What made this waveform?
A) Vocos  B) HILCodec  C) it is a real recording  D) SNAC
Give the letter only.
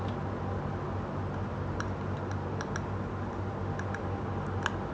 C